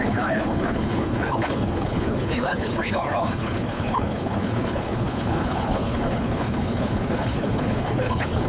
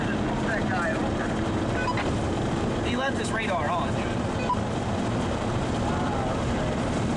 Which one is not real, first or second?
first